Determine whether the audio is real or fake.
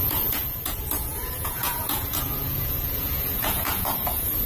fake